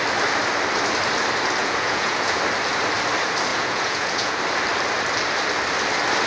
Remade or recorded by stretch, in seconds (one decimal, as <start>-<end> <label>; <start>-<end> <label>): 0.0-1.6 recorded; 1.6-2.4 remade; 2.4-3.5 recorded; 3.5-4.4 remade; 4.4-6.3 recorded